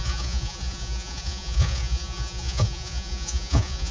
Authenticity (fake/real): fake